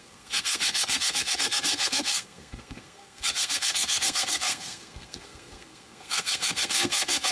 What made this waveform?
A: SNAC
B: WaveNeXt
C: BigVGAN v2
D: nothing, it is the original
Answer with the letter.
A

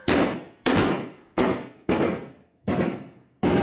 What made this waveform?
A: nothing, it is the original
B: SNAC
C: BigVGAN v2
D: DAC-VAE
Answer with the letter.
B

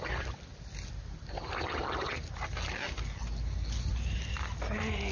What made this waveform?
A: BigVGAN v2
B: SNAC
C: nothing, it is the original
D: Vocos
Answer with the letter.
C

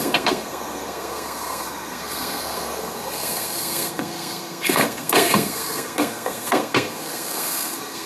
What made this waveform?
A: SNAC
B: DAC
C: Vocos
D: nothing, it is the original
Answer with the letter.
A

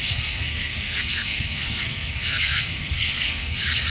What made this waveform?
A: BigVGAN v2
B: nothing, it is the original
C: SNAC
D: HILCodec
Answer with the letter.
C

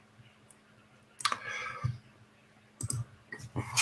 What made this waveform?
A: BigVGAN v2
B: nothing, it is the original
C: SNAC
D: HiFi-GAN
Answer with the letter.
B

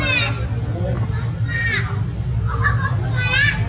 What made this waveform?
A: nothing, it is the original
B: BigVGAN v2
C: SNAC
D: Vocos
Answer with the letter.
A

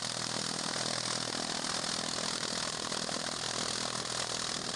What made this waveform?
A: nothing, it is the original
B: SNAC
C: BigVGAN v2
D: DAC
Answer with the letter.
A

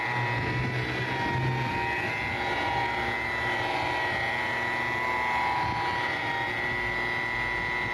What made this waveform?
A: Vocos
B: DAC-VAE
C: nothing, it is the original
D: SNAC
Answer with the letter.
C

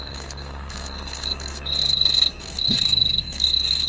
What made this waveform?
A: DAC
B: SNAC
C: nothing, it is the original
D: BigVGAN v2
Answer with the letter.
B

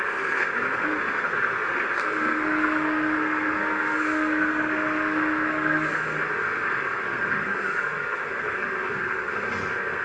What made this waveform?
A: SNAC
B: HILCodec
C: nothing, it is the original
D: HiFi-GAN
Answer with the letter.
A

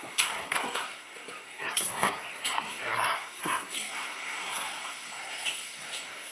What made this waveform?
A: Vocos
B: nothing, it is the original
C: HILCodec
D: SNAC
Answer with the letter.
D